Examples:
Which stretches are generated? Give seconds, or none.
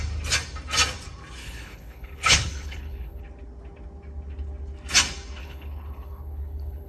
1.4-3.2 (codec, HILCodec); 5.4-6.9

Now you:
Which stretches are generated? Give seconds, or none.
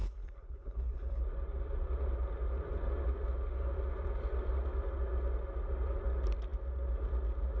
0.0-1.2 (codec, HILCodec)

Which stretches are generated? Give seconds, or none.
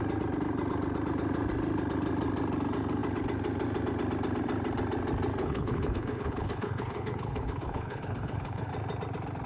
5.4-8.7 (codec, HILCodec)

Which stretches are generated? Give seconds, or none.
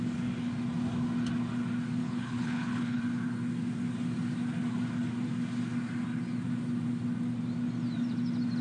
2.0-3.0 (codec, HILCodec)